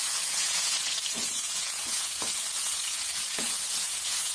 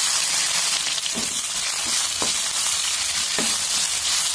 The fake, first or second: first